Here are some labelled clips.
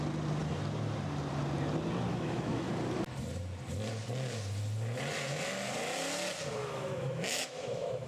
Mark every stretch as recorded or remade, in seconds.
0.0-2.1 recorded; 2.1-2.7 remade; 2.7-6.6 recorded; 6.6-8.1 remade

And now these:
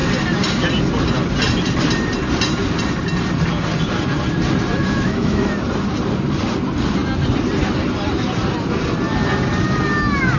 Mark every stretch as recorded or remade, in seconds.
0.0-4.8 recorded; 4.8-5.5 remade; 5.5-10.4 recorded

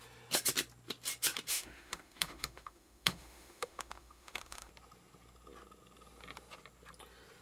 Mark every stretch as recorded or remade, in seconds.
0.0-1.5 recorded; 1.5-4.7 remade; 4.7-7.4 recorded

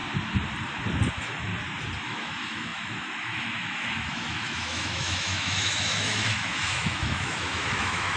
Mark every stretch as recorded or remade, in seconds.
0.0-1.1 recorded; 1.1-1.5 remade; 1.5-2.0 recorded; 2.0-8.2 remade

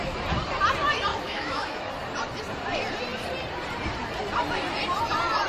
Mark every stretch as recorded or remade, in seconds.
0.0-1.1 recorded; 1.1-1.9 remade; 1.9-5.5 recorded

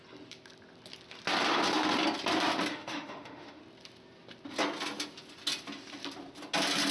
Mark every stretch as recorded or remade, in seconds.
0.0-2.7 recorded; 2.7-3.6 remade; 3.6-6.9 recorded